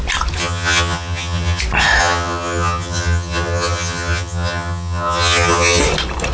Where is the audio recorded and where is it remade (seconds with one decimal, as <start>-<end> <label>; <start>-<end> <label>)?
0.0-0.4 recorded; 0.4-1.6 remade; 1.6-2.0 recorded; 2.0-5.8 remade; 5.8-6.3 recorded